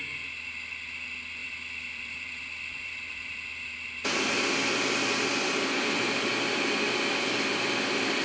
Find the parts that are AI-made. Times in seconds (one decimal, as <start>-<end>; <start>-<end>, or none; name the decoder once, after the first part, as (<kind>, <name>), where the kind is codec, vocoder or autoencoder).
1.4-6.3 (vocoder, BigVGAN v2)

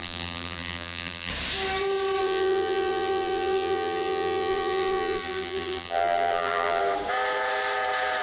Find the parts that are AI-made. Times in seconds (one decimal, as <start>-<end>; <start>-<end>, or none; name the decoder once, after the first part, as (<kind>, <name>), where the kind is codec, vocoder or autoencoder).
0.0-1.3 (vocoder, BigVGAN v2); 2.2-6.8

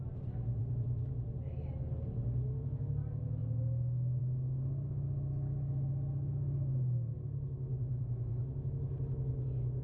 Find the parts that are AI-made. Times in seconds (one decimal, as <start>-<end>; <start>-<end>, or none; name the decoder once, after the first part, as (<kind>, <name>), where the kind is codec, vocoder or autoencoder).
0.6-1.1 (vocoder, BigVGAN v2); 7.7-8.4

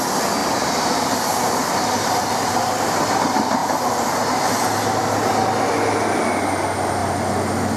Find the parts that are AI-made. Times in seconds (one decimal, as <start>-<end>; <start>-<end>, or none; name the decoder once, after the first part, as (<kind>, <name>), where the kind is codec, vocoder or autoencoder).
0.4-3.2 (vocoder, BigVGAN v2); 3.6-4.7